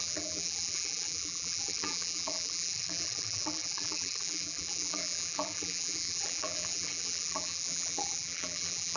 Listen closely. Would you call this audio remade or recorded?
remade